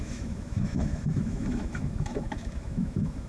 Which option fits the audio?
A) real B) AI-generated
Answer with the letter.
B